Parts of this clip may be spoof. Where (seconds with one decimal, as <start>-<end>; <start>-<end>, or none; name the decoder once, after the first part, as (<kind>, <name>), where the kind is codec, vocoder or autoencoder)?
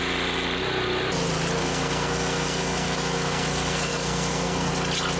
1.6-4.7 (codec, SNAC)